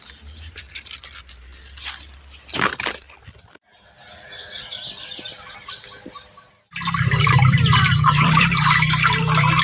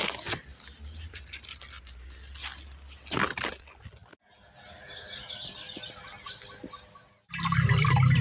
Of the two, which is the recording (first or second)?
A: second